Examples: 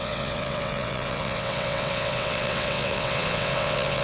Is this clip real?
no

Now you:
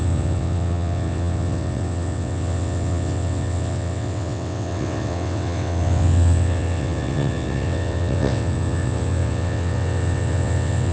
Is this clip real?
no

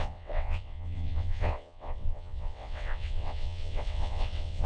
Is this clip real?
no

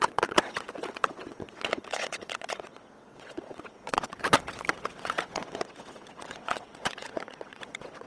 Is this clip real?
no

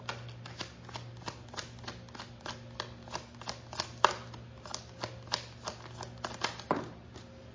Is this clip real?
yes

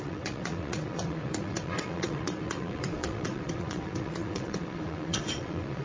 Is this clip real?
no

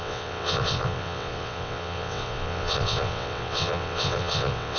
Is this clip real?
no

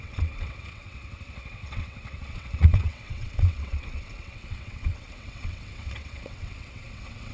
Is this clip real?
no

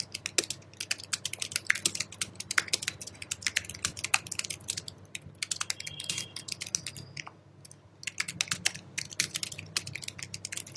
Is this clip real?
yes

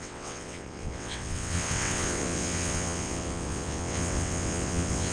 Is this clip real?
no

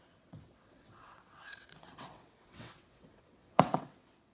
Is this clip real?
no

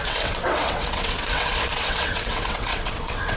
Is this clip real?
no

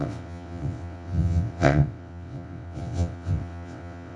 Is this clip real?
no